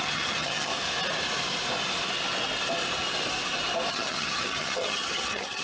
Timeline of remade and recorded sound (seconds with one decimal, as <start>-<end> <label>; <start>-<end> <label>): 0.0-0.7 remade; 0.7-3.9 recorded; 3.9-5.6 remade